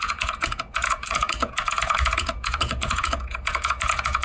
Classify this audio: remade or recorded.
remade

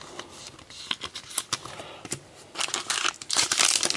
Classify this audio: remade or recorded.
recorded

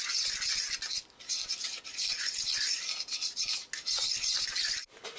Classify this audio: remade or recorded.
recorded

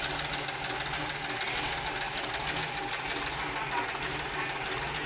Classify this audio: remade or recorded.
recorded